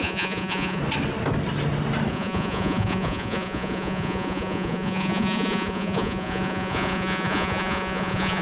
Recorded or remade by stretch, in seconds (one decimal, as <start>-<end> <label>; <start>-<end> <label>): 0.0-0.8 remade; 0.8-2.1 recorded; 2.1-8.4 remade